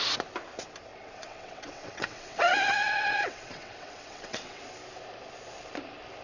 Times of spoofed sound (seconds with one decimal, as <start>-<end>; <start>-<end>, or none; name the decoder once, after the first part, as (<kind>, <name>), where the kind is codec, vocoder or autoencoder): 0.9-4.6 (vocoder, WaveNeXt)